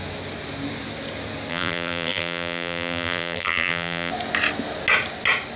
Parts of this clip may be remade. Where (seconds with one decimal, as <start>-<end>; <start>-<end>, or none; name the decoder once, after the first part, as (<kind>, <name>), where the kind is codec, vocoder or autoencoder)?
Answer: 1.5-4.1 (vocoder, BigVGAN v2)